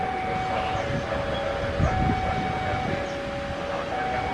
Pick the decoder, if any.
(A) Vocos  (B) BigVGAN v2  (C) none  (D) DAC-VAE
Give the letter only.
C